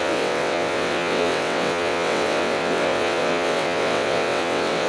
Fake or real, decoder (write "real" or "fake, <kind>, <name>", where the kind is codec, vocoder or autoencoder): fake, vocoder, WaveNeXt